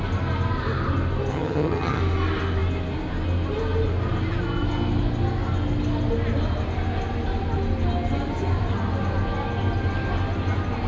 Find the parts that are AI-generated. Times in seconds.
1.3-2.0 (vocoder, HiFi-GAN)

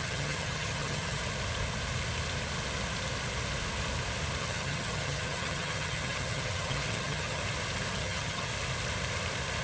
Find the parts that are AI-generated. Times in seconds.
0.0-1.2 (vocoder, HiFi-GAN); 4.4-7.4; 7.9-8.5

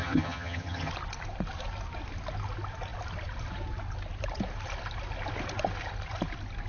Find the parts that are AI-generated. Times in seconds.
0.0-0.9 (vocoder, HiFi-GAN)

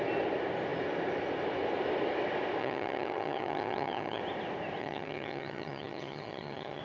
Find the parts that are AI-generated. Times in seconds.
2.6-4.2 (vocoder, HiFi-GAN); 4.8-6.8

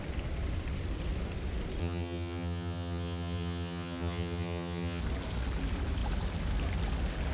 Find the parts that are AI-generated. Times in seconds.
1.8-5.0 (vocoder, HiFi-GAN)

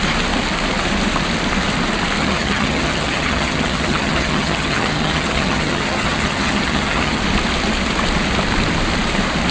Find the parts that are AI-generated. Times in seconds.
2.2-7.2 (vocoder, HiFi-GAN)

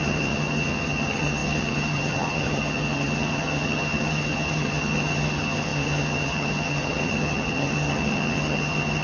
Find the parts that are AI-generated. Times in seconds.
0.0-9.0 (vocoder, HiFi-GAN)

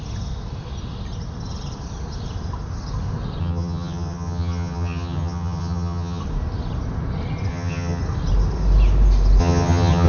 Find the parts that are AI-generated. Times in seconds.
3.4-6.2 (vocoder, HiFi-GAN); 7.5-8.0; 9.4-10.1